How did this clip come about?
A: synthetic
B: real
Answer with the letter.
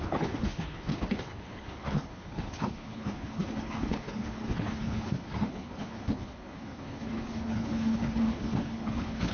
A